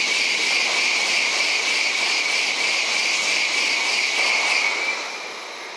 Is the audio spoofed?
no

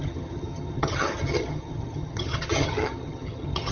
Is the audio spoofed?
yes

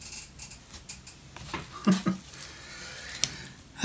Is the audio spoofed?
no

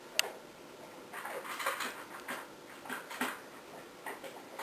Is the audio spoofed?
no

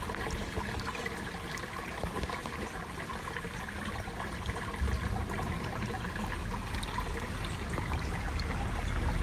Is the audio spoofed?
no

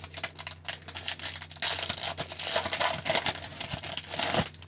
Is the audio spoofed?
no